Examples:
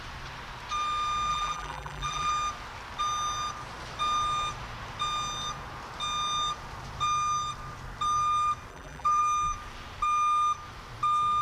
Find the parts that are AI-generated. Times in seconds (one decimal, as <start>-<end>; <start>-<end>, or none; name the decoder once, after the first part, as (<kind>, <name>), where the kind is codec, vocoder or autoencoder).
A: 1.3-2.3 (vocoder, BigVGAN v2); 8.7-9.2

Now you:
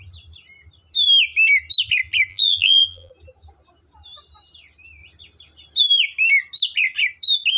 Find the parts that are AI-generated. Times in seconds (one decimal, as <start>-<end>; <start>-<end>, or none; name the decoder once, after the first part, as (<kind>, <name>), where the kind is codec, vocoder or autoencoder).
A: 2.3-3.1 (vocoder, BigVGAN v2)

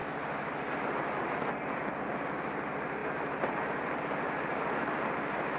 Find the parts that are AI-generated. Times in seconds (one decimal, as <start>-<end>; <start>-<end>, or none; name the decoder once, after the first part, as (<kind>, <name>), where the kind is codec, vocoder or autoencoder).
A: none

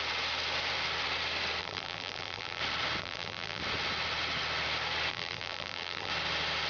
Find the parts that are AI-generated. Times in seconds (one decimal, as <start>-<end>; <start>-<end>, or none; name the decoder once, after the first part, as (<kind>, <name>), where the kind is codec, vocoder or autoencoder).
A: 1.6-2.6 (vocoder, BigVGAN v2); 3.0-3.6; 5.1-6.1

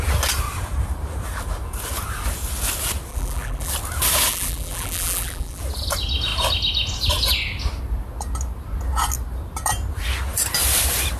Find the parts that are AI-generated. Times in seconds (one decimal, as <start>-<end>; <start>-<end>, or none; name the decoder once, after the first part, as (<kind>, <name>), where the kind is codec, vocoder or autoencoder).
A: 3.1-3.7 (vocoder, BigVGAN v2); 4.3-5.6